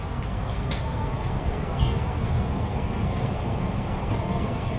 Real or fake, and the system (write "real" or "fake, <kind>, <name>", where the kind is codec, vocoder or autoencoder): fake, codec, SNAC